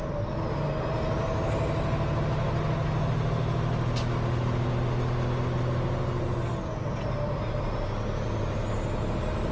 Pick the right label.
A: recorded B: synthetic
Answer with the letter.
A